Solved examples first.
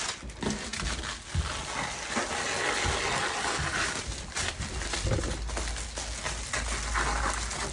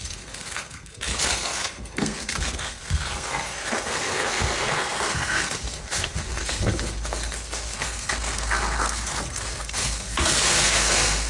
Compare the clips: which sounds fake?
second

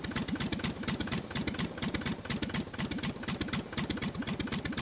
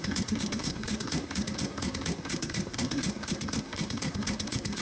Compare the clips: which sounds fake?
second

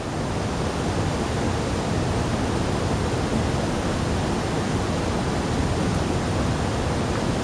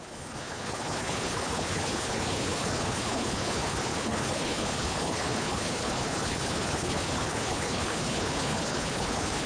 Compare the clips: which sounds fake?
second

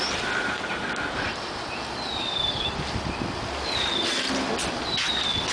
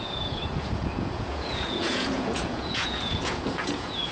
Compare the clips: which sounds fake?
second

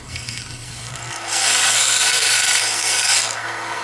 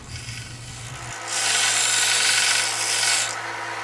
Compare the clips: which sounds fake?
first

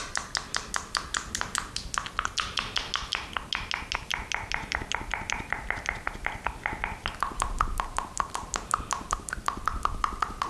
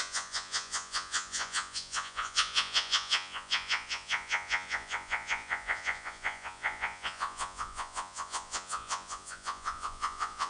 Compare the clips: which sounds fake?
second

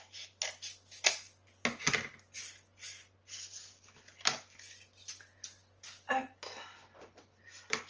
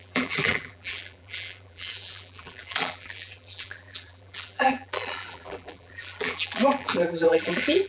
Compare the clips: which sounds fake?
second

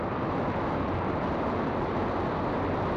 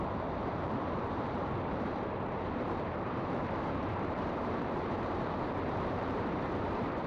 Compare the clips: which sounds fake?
second